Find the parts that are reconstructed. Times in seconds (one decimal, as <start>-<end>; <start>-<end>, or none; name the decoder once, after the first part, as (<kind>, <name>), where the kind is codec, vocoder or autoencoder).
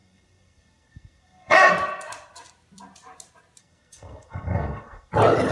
0.0-1.7 (codec, SNAC); 3.6-5.1